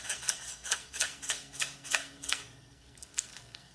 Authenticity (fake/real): fake